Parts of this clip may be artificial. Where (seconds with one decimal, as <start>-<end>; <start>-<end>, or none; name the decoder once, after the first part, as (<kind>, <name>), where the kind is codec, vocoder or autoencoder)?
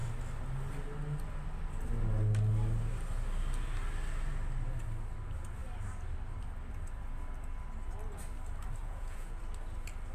8.8-9.4 (vocoder, Vocos)